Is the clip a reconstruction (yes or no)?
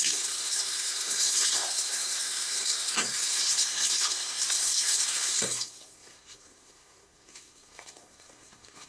yes